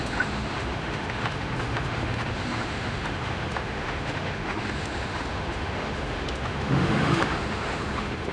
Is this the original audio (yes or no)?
no